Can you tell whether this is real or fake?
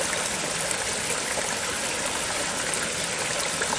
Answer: real